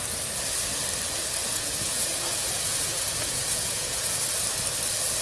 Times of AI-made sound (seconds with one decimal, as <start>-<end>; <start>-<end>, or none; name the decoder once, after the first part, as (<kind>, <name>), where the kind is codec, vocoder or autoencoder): 1.4-4.2 (vocoder, Vocos)